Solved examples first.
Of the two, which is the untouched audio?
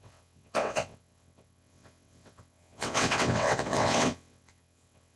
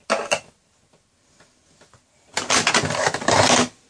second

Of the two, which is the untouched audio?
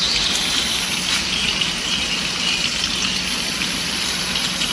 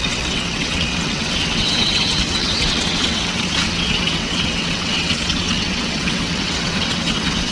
first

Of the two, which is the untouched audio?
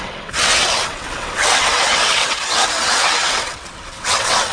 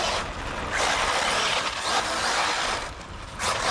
second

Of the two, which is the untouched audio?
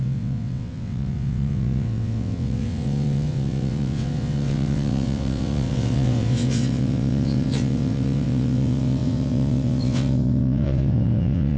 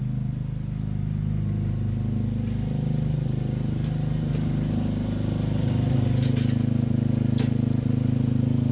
second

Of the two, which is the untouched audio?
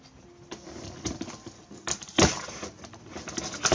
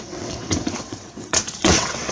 first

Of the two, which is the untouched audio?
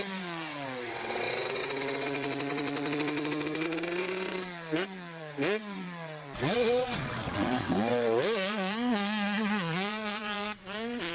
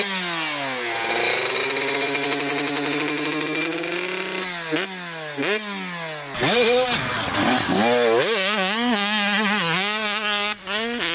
second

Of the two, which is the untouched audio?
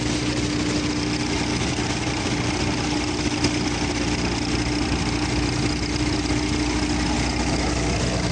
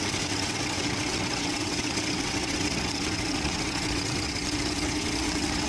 first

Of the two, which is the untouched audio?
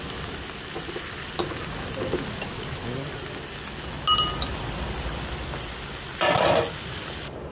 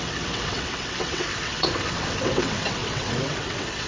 first